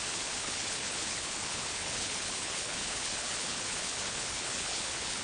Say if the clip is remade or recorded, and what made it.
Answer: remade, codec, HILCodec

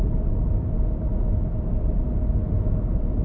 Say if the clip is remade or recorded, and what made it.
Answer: recorded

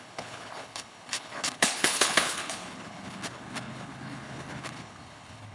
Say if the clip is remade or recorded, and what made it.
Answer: remade, codec, HILCodec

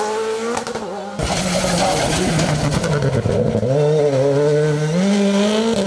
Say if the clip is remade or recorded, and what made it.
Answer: recorded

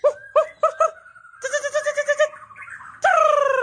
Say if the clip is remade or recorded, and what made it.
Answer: recorded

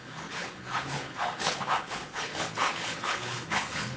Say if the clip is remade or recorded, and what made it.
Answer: remade, codec, HILCodec